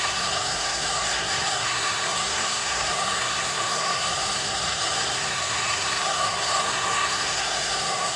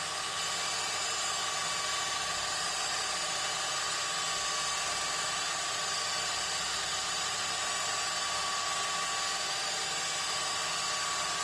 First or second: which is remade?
first